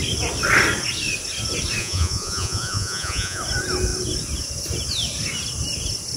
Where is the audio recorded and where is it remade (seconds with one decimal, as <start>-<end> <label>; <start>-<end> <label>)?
0.0-1.8 recorded; 1.8-3.4 remade; 3.4-6.2 recorded